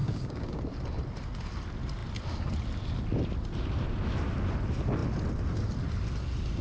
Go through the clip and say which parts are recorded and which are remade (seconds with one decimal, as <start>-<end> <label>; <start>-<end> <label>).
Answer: 0.0-0.6 remade; 0.6-6.6 recorded